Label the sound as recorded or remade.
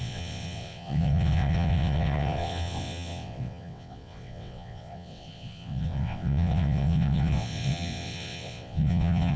remade